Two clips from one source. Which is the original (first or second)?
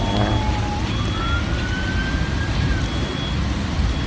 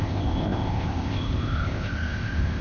first